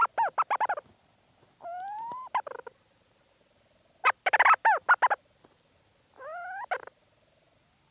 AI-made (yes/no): no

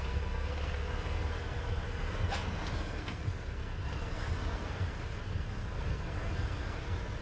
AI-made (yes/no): yes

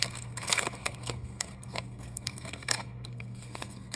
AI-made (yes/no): yes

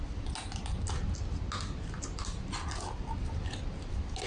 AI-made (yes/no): no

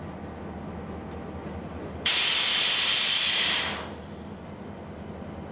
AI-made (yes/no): no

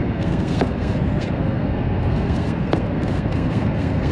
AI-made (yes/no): yes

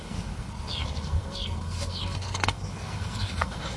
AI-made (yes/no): yes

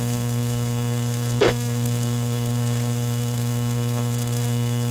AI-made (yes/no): yes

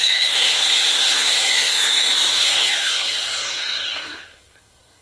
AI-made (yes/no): yes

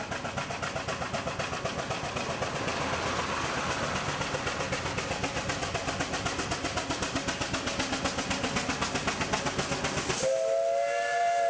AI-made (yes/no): no